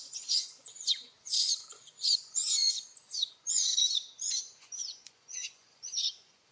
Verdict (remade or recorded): remade